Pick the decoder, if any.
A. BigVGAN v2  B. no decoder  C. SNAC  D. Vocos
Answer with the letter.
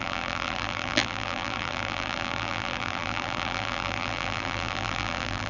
A